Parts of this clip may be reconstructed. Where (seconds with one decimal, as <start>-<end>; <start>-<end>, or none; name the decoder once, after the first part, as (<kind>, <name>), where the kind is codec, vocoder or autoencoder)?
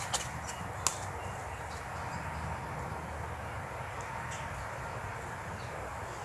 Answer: none